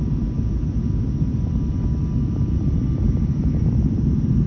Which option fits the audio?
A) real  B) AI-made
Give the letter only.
A